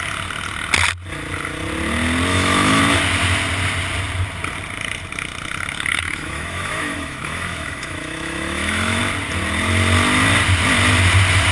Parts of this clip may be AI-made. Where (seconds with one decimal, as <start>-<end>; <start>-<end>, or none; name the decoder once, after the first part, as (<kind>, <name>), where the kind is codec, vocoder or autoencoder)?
2.3-2.8 (autoencoder, DAC-VAE); 5.9-9.0